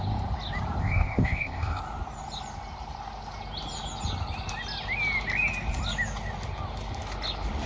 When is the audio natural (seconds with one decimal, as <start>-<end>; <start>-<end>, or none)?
0.0-0.8; 1.8-7.7